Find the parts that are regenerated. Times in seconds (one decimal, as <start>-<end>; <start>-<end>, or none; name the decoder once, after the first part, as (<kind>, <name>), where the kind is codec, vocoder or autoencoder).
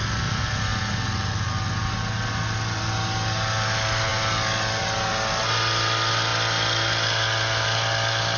none